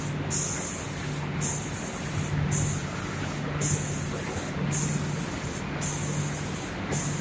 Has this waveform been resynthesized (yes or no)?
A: no